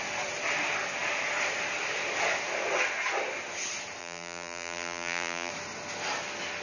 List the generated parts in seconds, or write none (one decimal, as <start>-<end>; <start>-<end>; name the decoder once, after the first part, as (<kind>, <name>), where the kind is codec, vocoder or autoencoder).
4.0-5.5 (vocoder, BigVGAN v2)